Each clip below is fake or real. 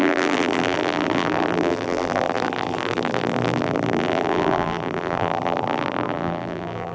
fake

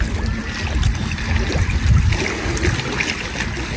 real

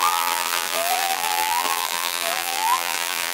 fake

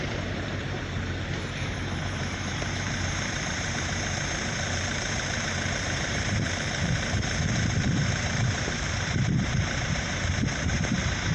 fake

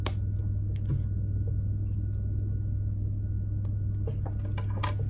real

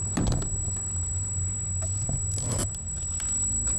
real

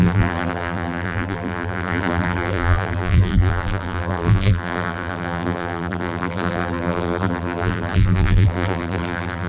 fake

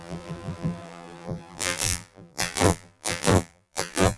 fake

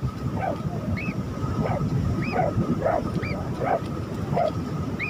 fake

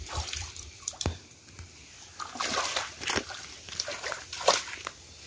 real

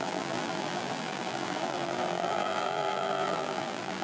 fake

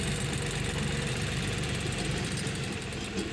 real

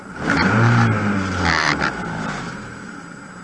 fake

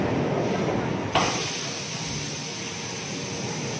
real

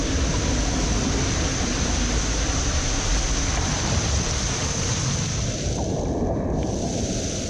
real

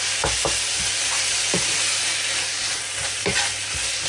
real